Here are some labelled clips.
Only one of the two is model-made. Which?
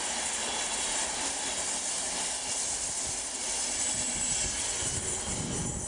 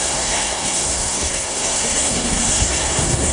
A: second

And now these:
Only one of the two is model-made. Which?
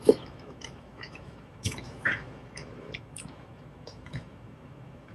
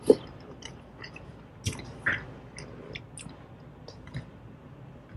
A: first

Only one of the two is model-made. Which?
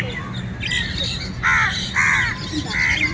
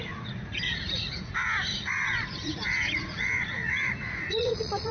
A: second